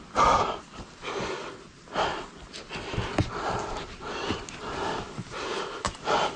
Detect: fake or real real